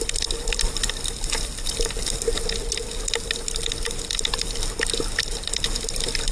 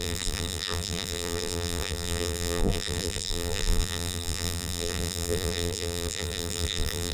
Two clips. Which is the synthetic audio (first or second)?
second